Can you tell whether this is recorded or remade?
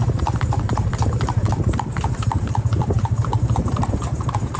remade